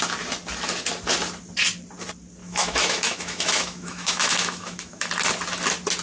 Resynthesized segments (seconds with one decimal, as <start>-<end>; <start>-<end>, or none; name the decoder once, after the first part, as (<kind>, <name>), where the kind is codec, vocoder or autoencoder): 2.4-5.1 (autoencoder, DAC-VAE)